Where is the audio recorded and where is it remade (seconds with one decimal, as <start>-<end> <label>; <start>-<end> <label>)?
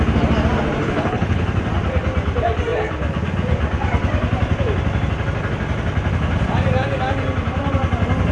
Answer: 0.0-0.8 recorded; 0.8-1.4 remade; 1.4-8.3 recorded